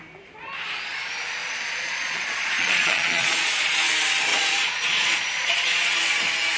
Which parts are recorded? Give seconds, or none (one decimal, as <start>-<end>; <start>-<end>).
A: 0.0-1.4; 3.9-4.3; 5.9-6.6